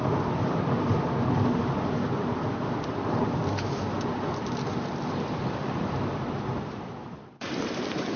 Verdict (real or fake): real